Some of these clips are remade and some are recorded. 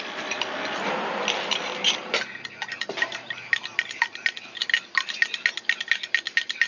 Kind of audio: recorded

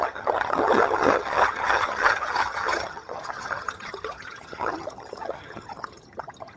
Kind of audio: remade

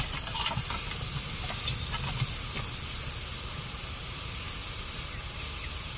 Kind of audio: recorded